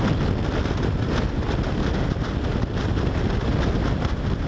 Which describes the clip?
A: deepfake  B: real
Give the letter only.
B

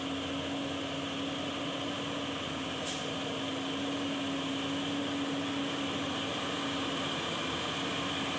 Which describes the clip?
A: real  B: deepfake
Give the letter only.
A